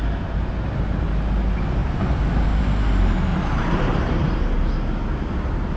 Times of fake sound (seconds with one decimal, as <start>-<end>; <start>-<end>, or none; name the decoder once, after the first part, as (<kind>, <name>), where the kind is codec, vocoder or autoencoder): 1.8-2.6 (vocoder, BigVGAN v2); 3.3-4.4